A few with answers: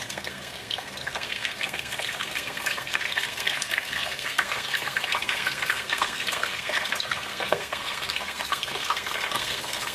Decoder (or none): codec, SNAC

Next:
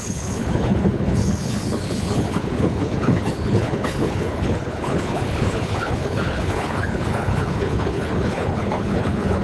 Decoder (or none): codec, HILCodec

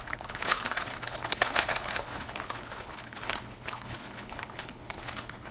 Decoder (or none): codec, HILCodec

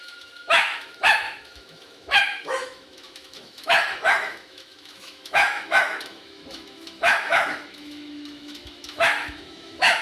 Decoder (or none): autoencoder, DAC-VAE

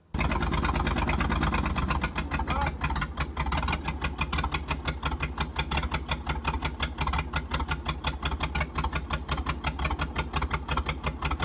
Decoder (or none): none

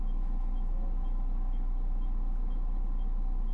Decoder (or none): none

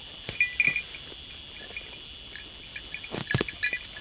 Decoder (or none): none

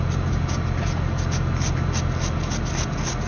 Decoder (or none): none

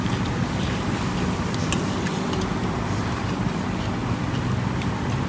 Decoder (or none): none